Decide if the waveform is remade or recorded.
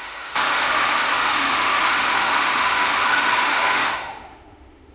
remade